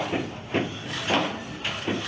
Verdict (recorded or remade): recorded